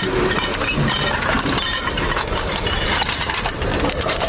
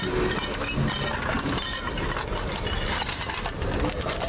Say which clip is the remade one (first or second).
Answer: first